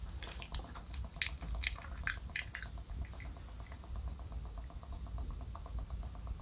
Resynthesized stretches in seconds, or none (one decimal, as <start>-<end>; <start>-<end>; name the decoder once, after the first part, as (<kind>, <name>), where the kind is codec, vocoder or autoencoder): none